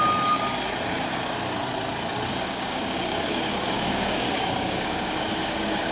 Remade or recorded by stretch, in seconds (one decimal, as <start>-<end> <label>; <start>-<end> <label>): 0.0-2.3 recorded; 2.3-5.9 remade